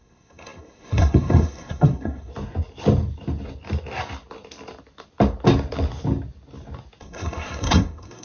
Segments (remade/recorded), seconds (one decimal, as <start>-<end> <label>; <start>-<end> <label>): 0.0-2.3 remade; 2.3-7.0 recorded; 7.0-8.2 remade